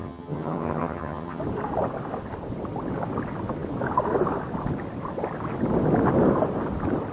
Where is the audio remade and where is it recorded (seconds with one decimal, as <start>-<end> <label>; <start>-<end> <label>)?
0.0-1.4 remade; 1.4-7.1 recorded